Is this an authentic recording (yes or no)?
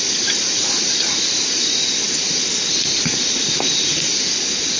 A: yes